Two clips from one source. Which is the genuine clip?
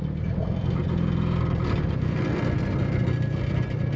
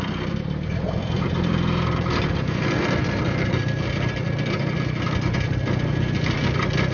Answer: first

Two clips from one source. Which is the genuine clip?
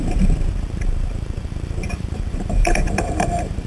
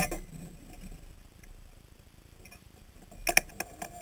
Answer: second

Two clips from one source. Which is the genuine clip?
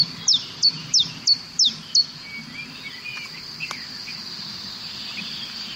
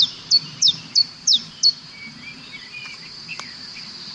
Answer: first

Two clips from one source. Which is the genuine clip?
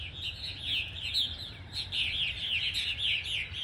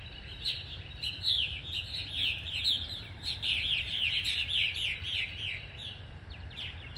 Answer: first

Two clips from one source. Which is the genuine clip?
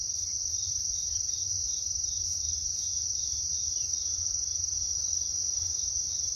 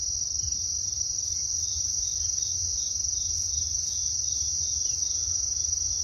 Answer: second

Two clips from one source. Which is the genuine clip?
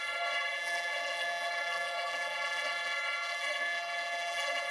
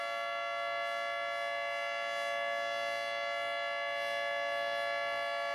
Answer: second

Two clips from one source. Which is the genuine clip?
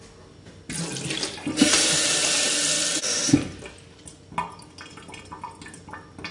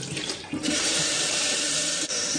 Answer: first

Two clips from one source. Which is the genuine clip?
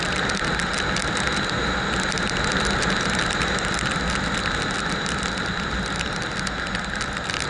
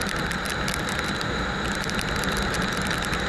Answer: first